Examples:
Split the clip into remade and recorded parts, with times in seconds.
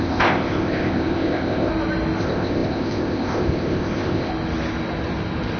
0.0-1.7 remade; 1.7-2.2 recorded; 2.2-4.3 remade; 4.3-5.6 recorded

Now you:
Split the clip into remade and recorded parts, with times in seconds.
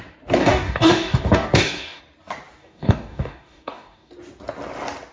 0.0-0.4 recorded; 0.4-2.0 remade; 2.0-2.6 recorded; 2.6-4.1 remade; 4.1-5.1 recorded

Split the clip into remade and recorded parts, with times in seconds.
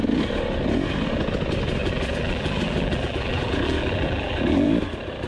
0.0-1.8 recorded; 1.8-4.8 remade; 4.8-5.3 recorded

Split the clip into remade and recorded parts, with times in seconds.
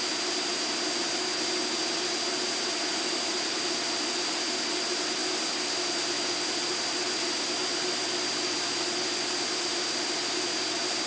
0.0-11.1 recorded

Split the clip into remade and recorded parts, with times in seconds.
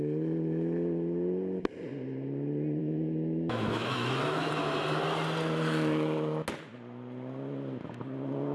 0.0-2.8 recorded; 2.8-4.5 remade; 4.5-8.5 recorded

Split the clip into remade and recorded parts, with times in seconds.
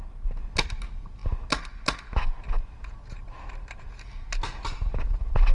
0.0-5.5 recorded